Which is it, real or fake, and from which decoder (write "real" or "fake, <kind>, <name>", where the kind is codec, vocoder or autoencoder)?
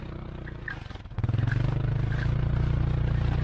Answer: fake, vocoder, BigVGAN v2